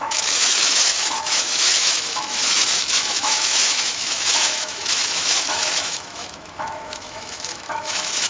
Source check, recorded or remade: remade